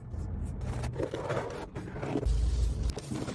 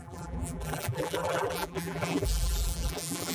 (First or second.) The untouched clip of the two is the first